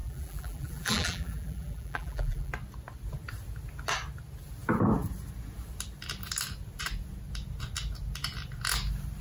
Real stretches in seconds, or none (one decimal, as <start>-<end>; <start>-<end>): 2.5-9.2